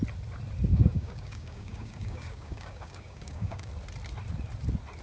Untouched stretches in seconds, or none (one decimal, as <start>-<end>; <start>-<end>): 0.0-0.7; 3.7-5.0